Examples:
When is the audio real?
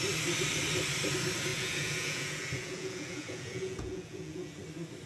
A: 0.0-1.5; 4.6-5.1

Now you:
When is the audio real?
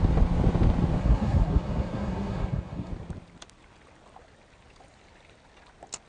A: 0.0-1.0; 2.9-6.1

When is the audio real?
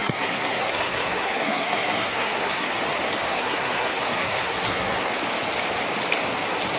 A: 2.8-3.3; 5.1-6.8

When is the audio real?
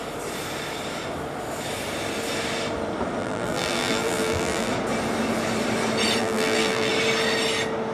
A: 0.0-3.2; 4.7-6.2; 6.9-7.9